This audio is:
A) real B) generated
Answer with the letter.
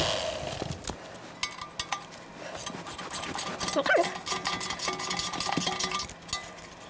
A